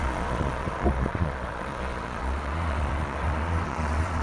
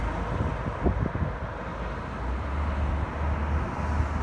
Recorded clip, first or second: second